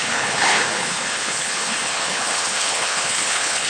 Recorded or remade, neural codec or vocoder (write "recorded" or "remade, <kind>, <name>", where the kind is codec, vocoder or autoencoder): remade, codec, HILCodec